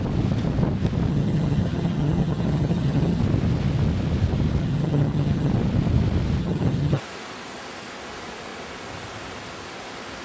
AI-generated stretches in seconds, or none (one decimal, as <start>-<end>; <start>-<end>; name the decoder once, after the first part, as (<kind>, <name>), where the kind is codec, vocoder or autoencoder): 1.1-3.2 (vocoder, HiFi-GAN); 4.6-5.5; 6.4-7.0